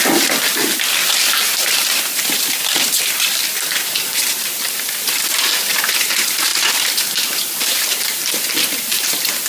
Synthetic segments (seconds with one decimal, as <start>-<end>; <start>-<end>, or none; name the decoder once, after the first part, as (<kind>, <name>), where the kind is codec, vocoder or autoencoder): none

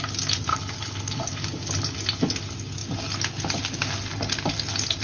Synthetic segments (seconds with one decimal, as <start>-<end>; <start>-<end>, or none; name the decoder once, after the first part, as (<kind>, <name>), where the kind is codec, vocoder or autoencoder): 0.5-1.2 (codec, HILCodec)

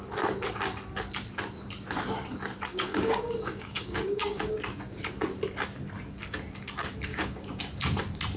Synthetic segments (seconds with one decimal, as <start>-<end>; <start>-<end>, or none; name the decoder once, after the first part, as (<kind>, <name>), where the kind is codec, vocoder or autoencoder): 2.7-4.5 (codec, DAC); 7.1-7.6

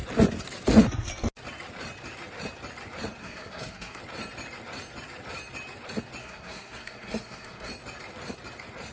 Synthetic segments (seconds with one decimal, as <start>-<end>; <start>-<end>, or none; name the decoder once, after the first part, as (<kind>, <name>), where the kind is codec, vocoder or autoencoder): 3.2-4.0 (codec, SNAC); 6.2-7.7

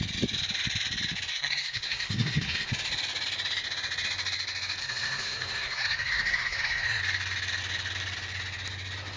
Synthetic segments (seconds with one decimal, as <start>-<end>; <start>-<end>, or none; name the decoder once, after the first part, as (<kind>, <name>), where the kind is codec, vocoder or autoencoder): 1.3-2.7 (codec, SNAC); 4.8-7.0